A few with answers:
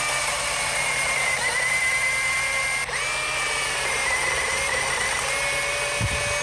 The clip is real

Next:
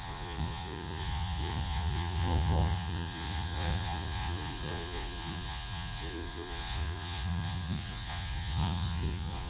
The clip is fake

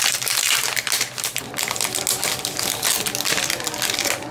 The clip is real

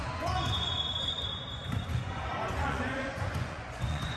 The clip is fake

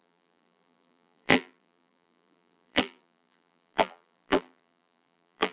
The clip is fake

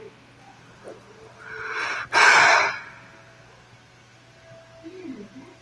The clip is real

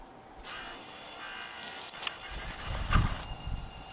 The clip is real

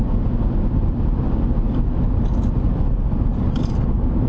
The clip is real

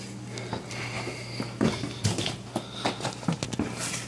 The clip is real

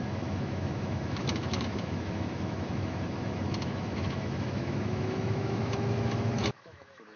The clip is fake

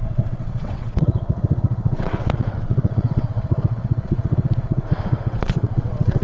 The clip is fake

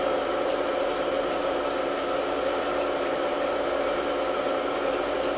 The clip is fake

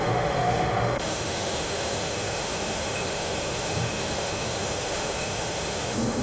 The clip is fake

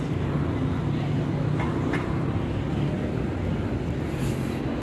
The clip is real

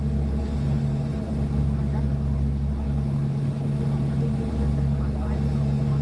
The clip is real